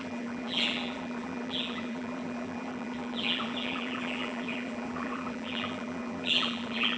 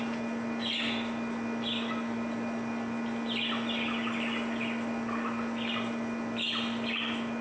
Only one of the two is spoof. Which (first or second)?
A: first